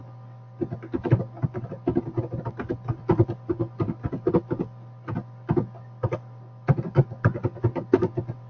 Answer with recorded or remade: recorded